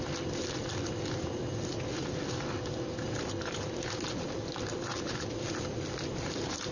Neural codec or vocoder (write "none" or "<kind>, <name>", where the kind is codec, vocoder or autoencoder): none